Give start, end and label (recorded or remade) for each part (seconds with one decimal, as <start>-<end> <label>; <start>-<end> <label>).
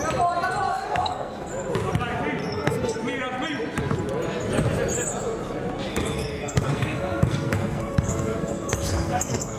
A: 0.0-0.7 recorded; 0.7-1.5 remade; 1.5-2.4 recorded; 2.4-3.0 remade; 3.0-5.9 recorded; 5.9-9.6 remade